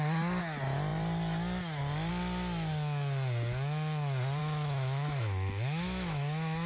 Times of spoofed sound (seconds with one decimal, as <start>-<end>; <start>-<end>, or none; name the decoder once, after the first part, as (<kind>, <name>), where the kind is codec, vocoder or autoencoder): 4.4-6.7 (autoencoder, DAC-VAE)